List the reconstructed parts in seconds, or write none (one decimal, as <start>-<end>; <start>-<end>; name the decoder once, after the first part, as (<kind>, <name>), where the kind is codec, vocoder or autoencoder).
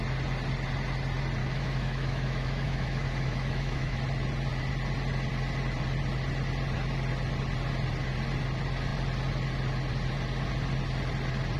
1.4-4.0 (autoencoder, DAC-VAE)